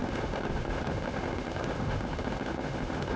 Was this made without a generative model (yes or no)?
no